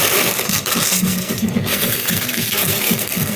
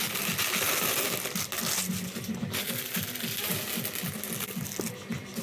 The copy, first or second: first